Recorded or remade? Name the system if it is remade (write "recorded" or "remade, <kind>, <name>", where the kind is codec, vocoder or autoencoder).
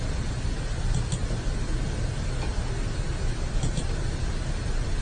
recorded